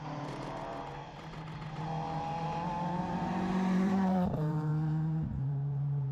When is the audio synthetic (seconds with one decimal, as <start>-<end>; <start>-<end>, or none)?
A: 0.0-0.7; 3.0-4.7; 5.4-6.1